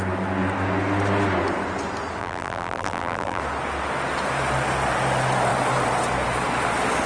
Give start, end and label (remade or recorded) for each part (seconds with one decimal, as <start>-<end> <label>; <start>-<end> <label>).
0.0-2.2 recorded; 2.2-3.4 remade; 3.4-7.1 recorded